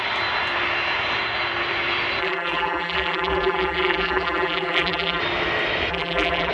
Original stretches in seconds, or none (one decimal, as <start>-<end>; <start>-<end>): 0.0-2.2; 5.2-5.9